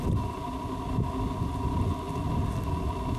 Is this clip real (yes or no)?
yes